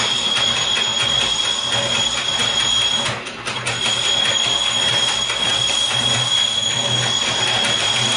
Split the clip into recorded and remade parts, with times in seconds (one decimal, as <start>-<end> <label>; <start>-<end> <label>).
0.0-8.2 recorded